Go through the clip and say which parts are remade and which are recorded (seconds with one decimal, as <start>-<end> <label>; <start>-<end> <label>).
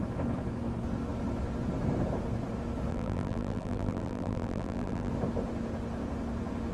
0.0-2.9 recorded; 2.9-5.1 remade; 5.1-6.7 recorded